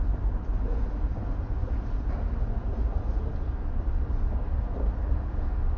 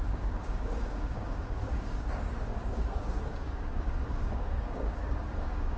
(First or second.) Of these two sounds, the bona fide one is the first